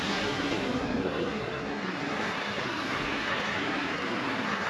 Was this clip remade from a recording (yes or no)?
yes